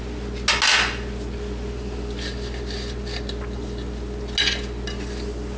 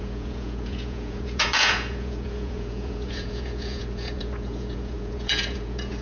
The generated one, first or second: second